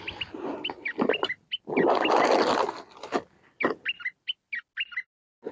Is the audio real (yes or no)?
yes